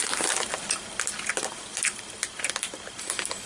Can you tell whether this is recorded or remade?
recorded